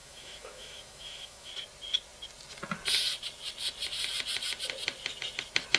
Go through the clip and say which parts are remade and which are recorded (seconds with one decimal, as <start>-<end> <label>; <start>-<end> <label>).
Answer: 0.0-1.5 remade; 1.5-5.8 recorded